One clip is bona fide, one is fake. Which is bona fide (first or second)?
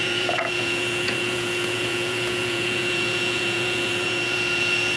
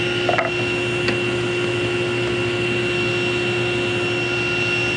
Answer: second